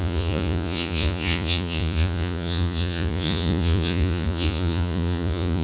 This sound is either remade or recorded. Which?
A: remade